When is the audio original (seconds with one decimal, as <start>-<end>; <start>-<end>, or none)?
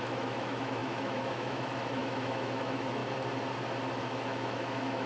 3.0-4.0